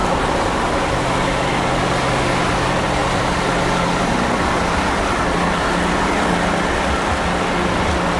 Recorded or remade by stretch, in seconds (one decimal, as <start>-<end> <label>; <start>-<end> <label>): 0.0-1.0 remade; 1.0-8.2 recorded